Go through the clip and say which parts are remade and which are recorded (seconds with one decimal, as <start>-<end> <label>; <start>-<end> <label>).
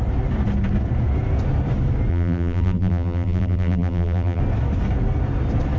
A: 0.0-2.1 recorded; 2.1-4.4 remade; 4.4-5.8 recorded